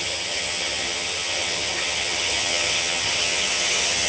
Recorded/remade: remade